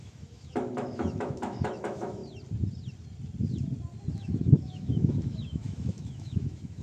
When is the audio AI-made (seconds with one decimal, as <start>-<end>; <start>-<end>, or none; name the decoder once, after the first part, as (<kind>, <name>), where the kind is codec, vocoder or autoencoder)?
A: 0.0-2.2 (autoencoder, DAC-VAE); 4.1-6.8